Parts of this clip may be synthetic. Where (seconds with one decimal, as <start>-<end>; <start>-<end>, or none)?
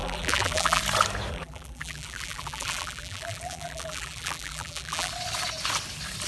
0.0-0.8; 1.3-5.1